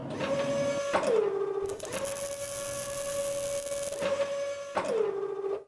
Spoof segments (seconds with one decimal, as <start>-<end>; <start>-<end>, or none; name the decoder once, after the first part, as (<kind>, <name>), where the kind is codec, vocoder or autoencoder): none